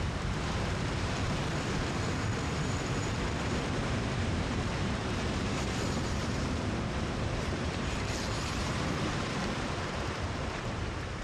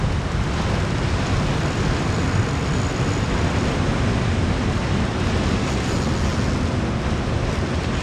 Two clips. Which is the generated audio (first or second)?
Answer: first